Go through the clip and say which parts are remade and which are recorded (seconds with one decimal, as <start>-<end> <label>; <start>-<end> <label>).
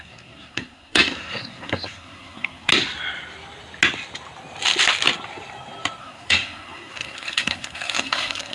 0.0-2.7 remade; 2.7-6.0 recorded; 6.0-8.5 remade